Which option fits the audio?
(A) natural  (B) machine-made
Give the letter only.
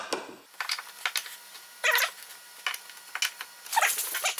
A